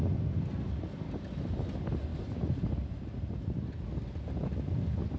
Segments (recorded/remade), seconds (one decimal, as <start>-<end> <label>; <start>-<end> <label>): 0.0-2.1 recorded; 2.1-3.7 remade; 3.7-5.2 recorded